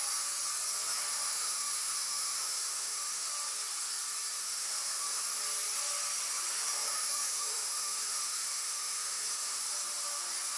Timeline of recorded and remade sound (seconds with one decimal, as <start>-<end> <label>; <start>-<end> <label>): 0.0-1.1 recorded; 1.1-3.3 remade; 3.3-4.4 recorded; 4.4-5.2 remade; 5.2-6.5 recorded; 6.5-9.6 remade; 9.6-10.6 recorded